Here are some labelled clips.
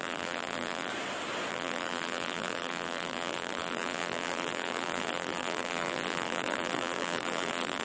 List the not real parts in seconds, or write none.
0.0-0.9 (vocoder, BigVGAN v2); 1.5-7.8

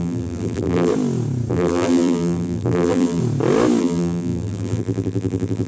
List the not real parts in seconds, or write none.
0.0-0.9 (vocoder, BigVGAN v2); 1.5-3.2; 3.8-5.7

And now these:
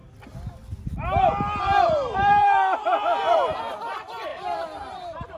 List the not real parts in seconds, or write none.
1.6-3.2 (vocoder, BigVGAN v2); 3.7-5.4

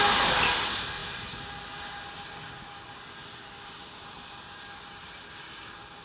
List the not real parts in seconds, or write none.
none